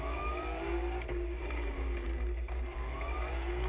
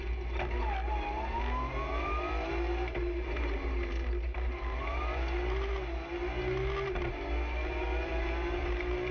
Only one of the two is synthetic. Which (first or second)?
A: first